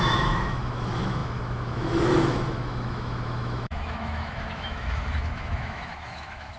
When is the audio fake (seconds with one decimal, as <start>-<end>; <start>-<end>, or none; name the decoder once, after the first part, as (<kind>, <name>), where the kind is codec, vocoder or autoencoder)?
0.0-6.6 (autoencoder, DAC-VAE)